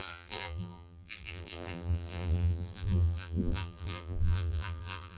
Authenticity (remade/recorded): remade